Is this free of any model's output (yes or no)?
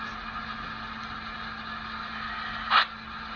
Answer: yes